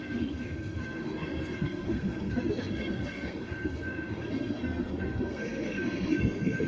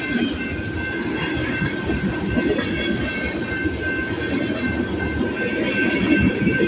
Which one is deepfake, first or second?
first